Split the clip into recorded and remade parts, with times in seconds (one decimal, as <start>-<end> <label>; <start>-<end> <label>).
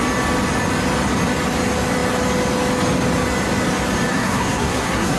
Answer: 0.0-4.1 recorded; 4.1-5.2 remade